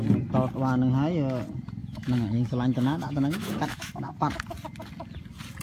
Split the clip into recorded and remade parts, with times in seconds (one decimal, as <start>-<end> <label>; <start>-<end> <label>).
0.0-1.8 recorded; 1.8-4.1 remade; 4.1-5.6 recorded